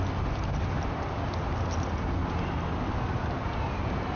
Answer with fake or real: real